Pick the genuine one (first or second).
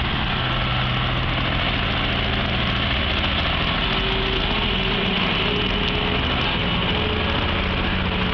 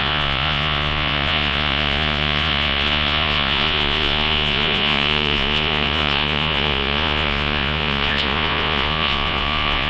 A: first